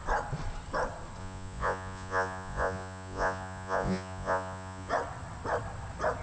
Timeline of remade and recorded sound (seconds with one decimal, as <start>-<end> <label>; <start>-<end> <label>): 0.0-1.2 recorded; 1.2-4.9 remade; 4.9-6.2 recorded